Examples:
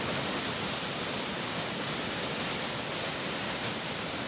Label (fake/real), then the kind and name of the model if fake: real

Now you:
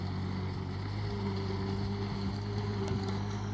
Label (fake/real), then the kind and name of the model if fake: real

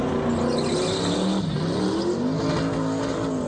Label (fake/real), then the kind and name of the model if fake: real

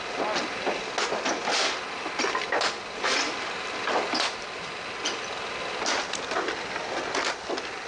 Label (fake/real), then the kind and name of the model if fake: real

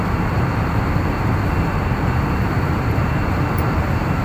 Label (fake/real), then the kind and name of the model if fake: fake, vocoder, BigVGAN v2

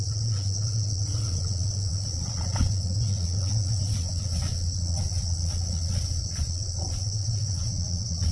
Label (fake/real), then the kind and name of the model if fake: fake, vocoder, Vocos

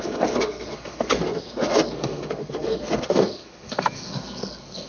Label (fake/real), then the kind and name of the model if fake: fake, codec, SNAC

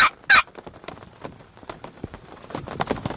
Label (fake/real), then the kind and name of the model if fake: real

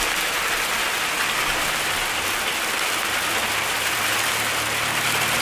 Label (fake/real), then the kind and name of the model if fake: real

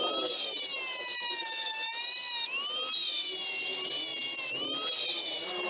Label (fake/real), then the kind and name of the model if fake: real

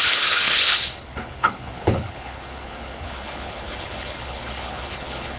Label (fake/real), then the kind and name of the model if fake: fake, codec, HILCodec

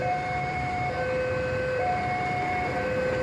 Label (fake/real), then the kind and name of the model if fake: fake, vocoder, BigVGAN v2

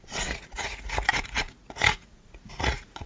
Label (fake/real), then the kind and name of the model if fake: fake, vocoder, Vocos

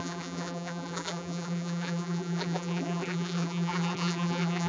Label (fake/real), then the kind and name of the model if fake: fake, vocoder, BigVGAN v2